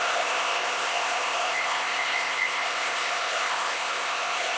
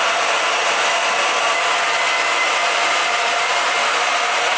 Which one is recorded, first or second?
second